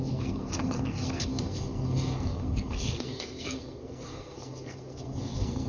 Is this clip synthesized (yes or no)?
yes